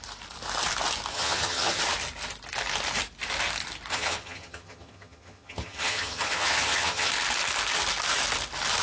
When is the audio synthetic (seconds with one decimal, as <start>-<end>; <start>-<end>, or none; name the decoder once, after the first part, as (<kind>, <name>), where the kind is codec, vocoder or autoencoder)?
1.1-1.8 (vocoder, HiFi-GAN); 3.9-7.1

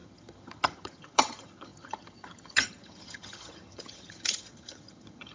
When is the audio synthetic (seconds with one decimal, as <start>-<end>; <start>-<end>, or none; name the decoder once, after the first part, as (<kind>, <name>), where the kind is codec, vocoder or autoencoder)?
0.0-5.3 (vocoder, HiFi-GAN)